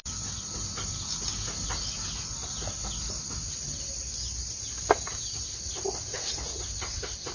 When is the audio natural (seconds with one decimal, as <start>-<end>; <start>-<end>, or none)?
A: 0.0-7.3